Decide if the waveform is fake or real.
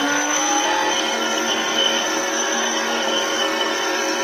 fake